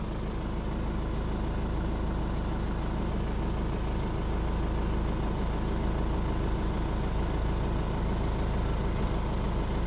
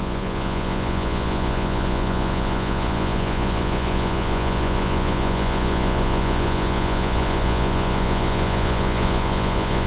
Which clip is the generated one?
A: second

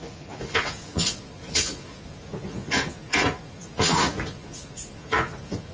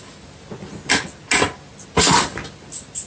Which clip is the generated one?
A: first